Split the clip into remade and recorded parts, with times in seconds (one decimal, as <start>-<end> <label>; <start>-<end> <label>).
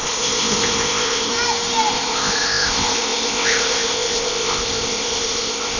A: 0.0-1.3 remade; 1.3-1.9 recorded; 1.9-5.8 remade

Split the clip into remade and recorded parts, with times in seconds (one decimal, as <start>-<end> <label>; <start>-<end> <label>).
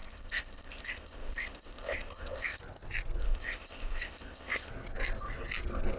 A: 0.0-2.6 remade; 2.6-3.2 recorded; 3.2-4.7 remade; 4.7-6.0 recorded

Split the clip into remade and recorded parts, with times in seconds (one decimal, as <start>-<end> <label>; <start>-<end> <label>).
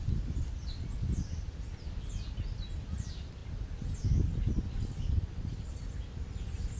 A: 0.0-6.8 recorded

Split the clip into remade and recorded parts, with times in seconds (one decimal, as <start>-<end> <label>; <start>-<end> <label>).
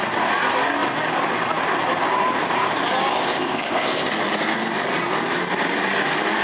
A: 0.0-3.1 recorded; 3.1-4.1 remade; 4.1-6.4 recorded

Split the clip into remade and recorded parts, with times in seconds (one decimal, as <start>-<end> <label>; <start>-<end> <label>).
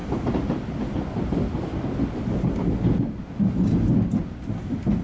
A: 0.0-5.0 recorded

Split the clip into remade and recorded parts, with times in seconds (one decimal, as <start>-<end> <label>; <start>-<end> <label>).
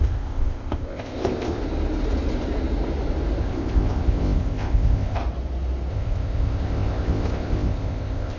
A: 0.0-1.6 remade; 1.6-3.4 recorded; 3.4-5.2 remade; 5.2-5.9 recorded; 5.9-8.4 remade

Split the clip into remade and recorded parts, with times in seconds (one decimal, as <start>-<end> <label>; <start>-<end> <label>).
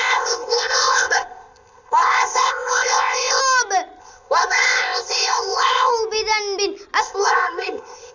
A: 0.0-3.4 remade; 3.4-4.0 recorded; 4.0-5.9 remade; 5.9-7.0 recorded; 7.0-8.1 remade